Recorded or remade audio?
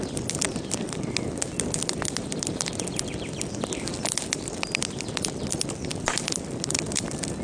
recorded